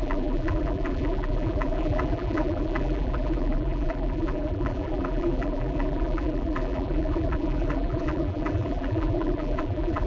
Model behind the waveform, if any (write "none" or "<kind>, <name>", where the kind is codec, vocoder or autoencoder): vocoder, BigVGAN v2